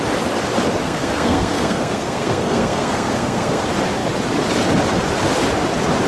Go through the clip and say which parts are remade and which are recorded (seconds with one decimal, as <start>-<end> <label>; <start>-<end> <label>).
0.0-0.8 recorded; 0.8-3.6 remade; 3.6-6.1 recorded